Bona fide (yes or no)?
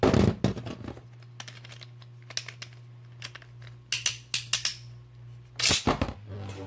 yes